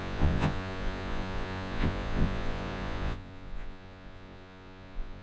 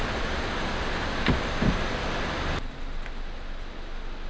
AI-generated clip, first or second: first